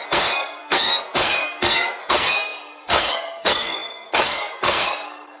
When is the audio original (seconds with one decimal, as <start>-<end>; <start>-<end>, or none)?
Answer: none